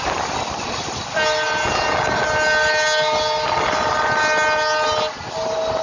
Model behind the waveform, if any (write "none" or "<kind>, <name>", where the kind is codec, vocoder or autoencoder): none